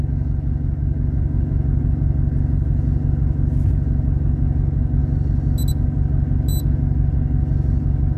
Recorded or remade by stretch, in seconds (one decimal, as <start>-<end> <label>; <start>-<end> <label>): 0.0-8.2 recorded